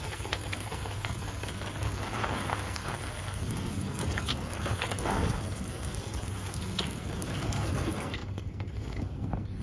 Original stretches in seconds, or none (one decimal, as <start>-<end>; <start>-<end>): none